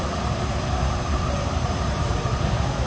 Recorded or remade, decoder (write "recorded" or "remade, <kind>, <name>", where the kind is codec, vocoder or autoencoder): remade, vocoder, BigVGAN v2